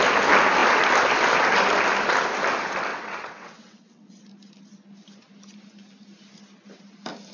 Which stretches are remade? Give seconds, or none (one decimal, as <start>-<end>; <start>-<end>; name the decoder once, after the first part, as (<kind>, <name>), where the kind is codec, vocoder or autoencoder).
2.9-4.2 (vocoder, WaveNeXt)